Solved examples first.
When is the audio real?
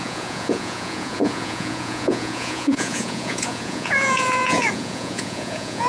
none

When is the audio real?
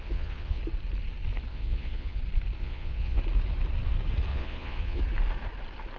0.6-1.5; 2.2-2.6; 3.2-4.3; 5.0-6.0